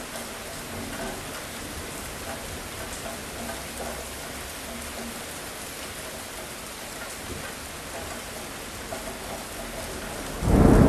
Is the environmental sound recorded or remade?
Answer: recorded